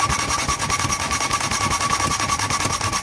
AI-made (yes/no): yes